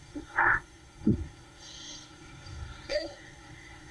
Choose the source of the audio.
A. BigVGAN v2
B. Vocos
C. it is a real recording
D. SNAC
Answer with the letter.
D